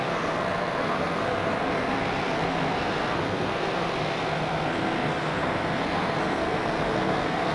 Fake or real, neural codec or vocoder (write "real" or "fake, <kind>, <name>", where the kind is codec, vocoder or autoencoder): fake, codec, SNAC